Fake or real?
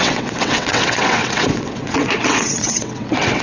fake